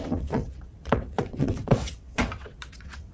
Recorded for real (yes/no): no